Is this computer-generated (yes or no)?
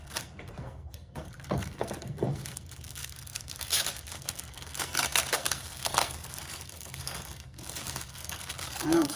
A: yes